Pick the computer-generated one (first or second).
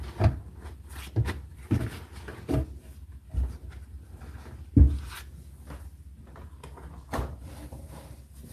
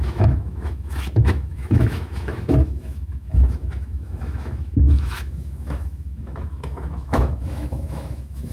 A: second